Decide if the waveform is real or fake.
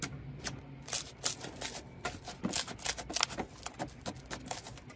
real